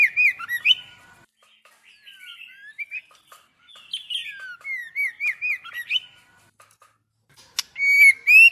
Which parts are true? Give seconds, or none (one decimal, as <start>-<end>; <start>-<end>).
0.0-8.5